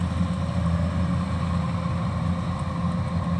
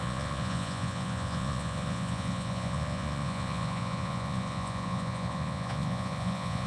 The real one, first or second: first